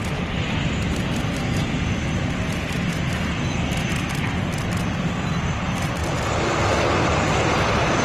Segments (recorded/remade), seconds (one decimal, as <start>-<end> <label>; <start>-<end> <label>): 0.0-8.0 recorded